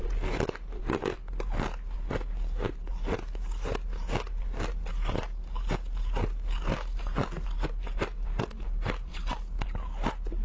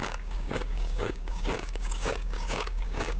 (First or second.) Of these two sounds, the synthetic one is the second